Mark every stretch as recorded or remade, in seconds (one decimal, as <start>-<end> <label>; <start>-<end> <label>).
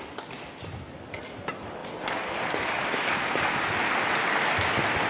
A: 0.0-5.1 recorded